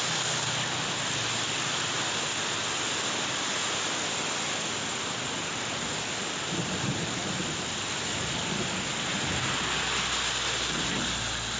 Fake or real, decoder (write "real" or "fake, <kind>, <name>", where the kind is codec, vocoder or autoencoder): real